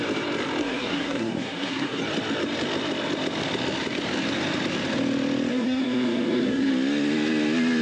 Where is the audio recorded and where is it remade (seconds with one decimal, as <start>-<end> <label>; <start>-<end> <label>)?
0.0-0.6 recorded; 0.6-2.0 remade; 2.0-5.5 recorded; 5.5-6.7 remade; 6.7-7.8 recorded